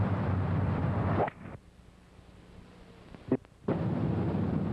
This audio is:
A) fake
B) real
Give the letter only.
A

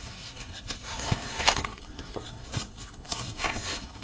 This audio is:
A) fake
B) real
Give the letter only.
A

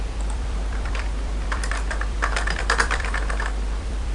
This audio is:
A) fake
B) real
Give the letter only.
A